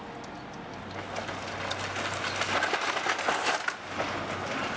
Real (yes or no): yes